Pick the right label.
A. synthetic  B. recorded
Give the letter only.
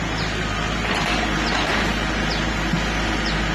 B